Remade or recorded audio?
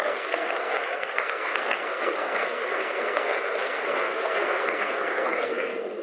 remade